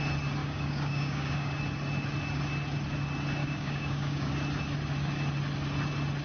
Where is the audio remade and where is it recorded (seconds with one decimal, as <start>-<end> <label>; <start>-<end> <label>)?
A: 0.0-0.4 recorded; 0.4-1.6 remade; 1.6-3.4 recorded; 3.4-4.3 remade; 4.3-6.2 recorded

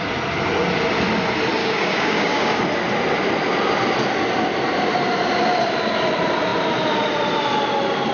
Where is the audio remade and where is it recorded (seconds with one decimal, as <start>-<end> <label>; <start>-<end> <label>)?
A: 0.0-1.6 recorded; 1.6-2.6 remade; 2.6-8.1 recorded

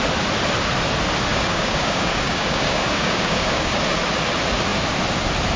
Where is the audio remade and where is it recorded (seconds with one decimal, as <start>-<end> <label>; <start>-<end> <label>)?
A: 0.0-1.3 recorded; 1.3-3.8 remade; 3.8-5.6 recorded

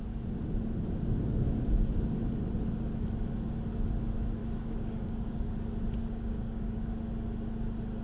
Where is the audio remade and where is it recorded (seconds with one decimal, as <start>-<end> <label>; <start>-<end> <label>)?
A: 0.0-4.4 recorded; 4.4-5.5 remade; 5.5-6.0 recorded; 6.0-6.8 remade; 6.8-8.0 recorded

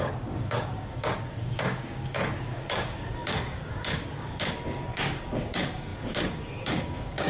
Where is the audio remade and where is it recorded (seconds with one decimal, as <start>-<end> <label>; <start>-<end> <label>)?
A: 0.0-7.3 remade

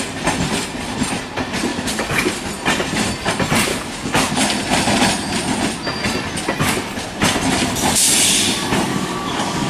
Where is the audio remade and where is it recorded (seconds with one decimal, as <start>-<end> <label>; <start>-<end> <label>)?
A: 0.0-1.7 recorded; 1.7-2.5 remade; 2.5-3.7 recorded; 3.7-4.4 remade; 4.4-8.9 recorded; 8.9-9.7 remade